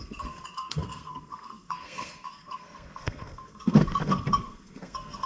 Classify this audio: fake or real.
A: fake